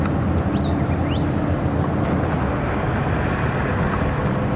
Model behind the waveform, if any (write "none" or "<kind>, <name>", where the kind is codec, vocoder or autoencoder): none